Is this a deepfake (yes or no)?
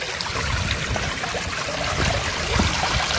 yes